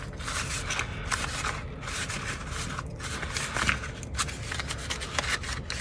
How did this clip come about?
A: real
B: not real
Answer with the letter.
A